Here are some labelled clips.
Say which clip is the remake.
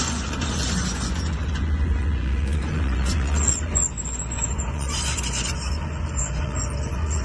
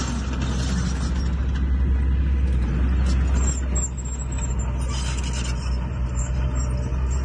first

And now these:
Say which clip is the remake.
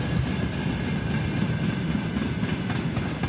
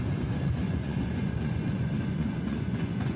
second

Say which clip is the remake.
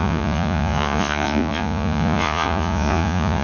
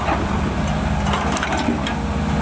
first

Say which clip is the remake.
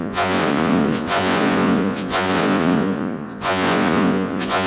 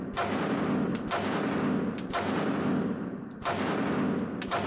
first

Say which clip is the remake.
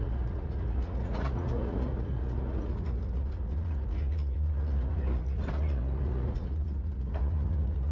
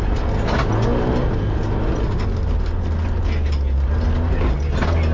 first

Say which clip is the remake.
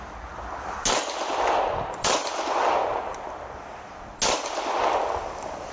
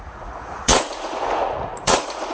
second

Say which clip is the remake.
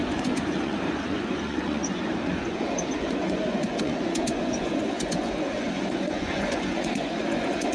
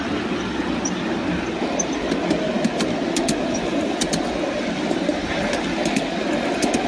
first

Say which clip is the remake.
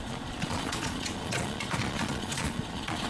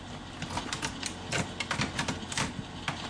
first